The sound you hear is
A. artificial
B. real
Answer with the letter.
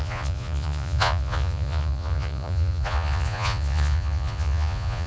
A